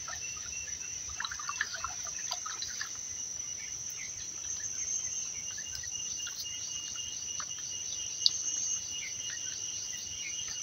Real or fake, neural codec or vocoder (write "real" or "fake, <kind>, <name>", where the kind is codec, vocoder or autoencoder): fake, vocoder, BigVGAN v2